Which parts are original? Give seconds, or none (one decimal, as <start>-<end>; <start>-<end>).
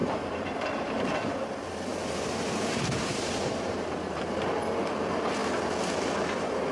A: 0.9-1.9; 4.3-6.7